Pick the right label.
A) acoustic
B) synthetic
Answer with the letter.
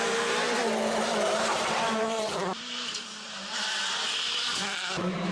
B